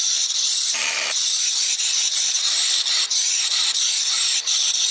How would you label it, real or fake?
real